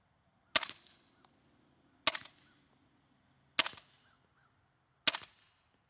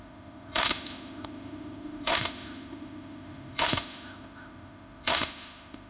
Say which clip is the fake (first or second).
second